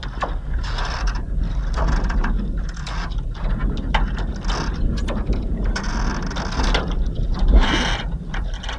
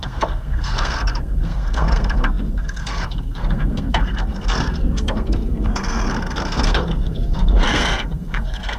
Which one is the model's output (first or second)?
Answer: second